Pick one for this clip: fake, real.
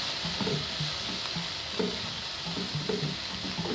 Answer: real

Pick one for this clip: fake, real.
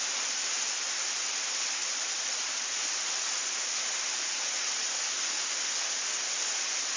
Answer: real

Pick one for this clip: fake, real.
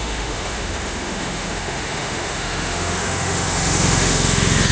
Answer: fake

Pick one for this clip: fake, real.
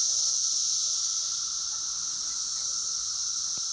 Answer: real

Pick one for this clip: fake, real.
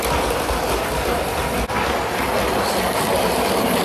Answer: real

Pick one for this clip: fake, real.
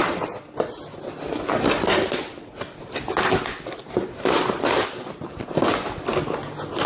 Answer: real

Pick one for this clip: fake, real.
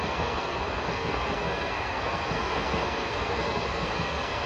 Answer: fake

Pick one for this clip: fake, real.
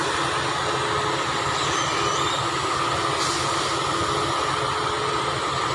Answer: real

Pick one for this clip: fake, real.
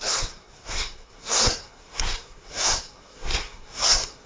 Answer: fake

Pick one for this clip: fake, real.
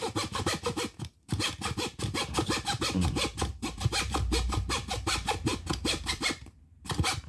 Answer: fake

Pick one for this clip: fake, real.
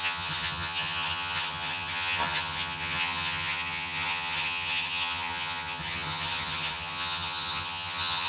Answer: fake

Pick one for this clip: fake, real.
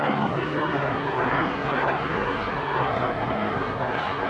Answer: fake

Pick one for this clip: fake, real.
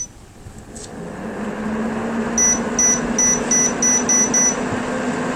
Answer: real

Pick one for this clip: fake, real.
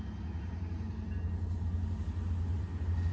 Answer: real